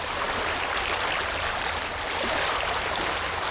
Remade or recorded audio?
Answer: recorded